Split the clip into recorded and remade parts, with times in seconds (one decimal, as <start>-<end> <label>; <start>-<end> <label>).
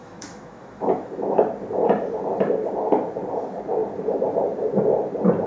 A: 0.0-1.2 remade; 1.2-5.5 recorded